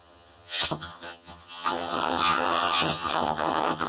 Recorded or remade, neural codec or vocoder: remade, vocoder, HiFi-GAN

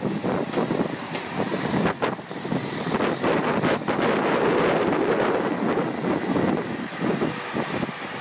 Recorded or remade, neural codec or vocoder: recorded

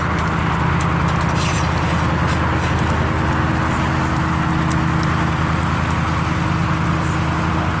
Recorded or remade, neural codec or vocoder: recorded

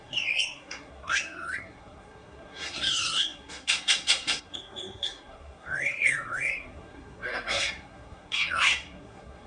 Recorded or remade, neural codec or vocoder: remade, codec, SNAC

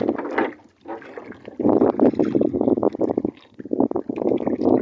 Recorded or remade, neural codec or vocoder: recorded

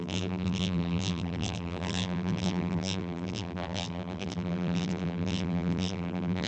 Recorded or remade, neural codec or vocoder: remade, vocoder, BigVGAN v2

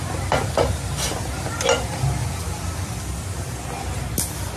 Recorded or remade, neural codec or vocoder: recorded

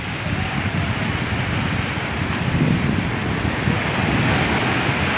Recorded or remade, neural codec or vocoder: recorded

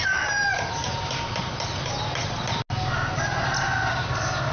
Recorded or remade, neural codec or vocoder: recorded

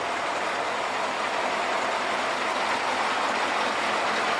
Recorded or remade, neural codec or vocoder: recorded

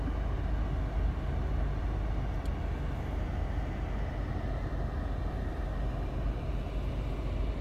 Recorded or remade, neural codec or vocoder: recorded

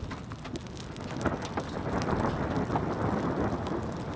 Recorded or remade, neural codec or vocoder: recorded